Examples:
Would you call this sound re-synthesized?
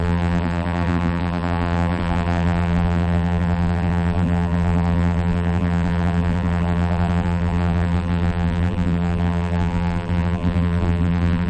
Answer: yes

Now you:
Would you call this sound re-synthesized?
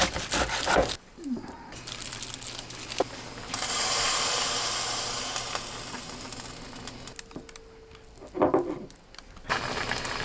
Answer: no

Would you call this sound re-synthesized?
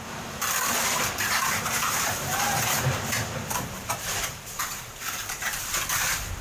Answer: yes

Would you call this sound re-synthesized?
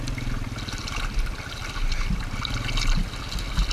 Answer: no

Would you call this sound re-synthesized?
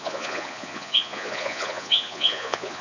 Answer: yes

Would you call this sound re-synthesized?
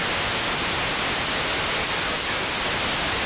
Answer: no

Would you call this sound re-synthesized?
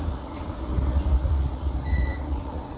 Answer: yes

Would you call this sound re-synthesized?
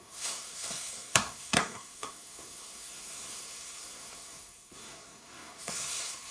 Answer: yes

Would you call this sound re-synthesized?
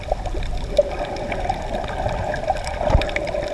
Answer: no